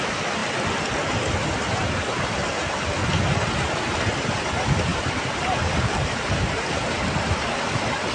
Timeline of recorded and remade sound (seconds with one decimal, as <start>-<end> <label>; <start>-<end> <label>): 0.0-4.9 recorded; 4.9-6.6 remade; 6.6-8.1 recorded